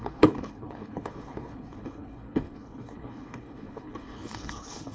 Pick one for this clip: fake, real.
fake